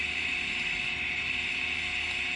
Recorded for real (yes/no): yes